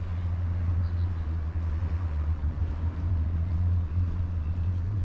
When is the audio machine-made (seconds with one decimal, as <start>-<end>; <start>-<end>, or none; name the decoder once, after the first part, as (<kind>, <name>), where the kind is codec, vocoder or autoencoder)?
0.0-2.6 (vocoder, Vocos); 3.1-5.0